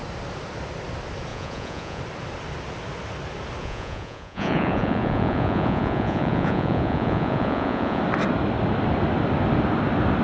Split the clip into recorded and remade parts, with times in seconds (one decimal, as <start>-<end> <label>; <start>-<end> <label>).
0.0-1.3 recorded; 1.3-2.0 remade; 2.0-3.6 recorded; 3.6-8.0 remade; 8.0-10.2 recorded